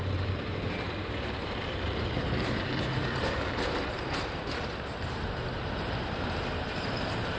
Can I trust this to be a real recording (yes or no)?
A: no